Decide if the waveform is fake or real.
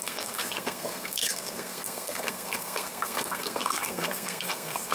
fake